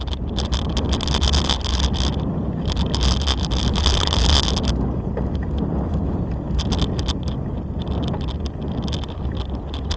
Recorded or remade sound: recorded